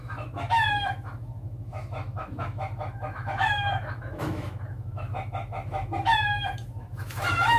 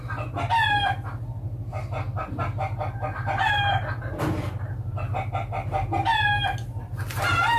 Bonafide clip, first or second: second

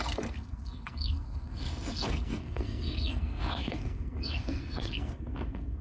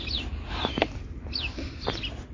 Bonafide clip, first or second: second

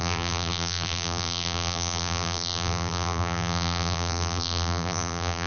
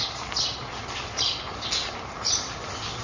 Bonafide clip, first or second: second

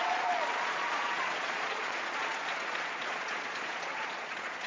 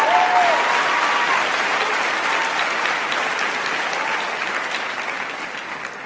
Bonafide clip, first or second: second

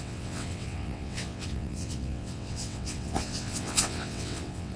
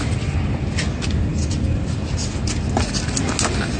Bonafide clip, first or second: second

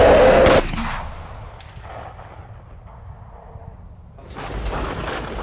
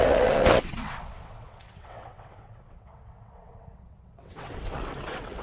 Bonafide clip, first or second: first